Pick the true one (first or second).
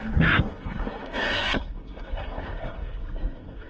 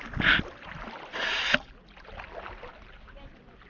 second